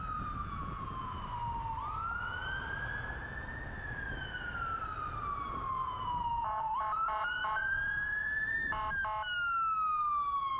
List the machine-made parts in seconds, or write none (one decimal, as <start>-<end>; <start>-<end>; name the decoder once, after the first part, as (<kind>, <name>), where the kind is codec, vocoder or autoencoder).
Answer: 0.4-1.2 (vocoder, Vocos); 5.8-8.8